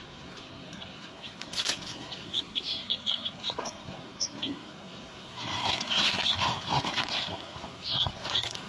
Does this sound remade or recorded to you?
remade